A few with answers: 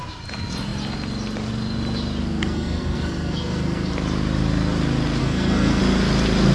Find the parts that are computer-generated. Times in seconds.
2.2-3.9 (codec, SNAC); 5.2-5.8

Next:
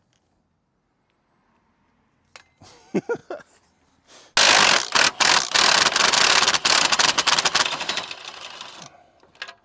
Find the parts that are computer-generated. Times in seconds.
none

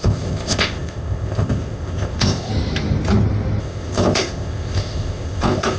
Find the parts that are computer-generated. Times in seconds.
0.0-2.5 (codec, ZipCodec); 3.6-5.8